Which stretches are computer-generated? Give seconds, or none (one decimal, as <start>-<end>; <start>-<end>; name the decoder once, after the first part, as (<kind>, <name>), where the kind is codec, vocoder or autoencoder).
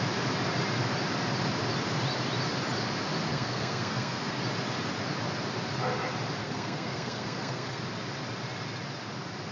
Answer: 3.3-4.4 (codec, SNAC); 6.4-7.8